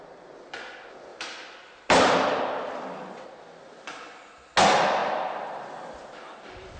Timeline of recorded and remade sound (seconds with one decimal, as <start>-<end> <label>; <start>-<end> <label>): 0.0-1.1 recorded; 1.1-2.4 remade; 2.4-6.8 recorded